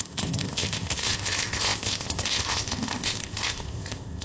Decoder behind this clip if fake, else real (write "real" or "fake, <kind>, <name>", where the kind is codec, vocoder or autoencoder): fake, codec, ZipCodec